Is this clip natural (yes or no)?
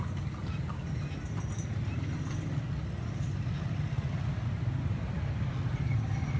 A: yes